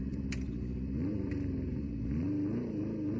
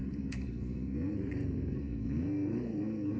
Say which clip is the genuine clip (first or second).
first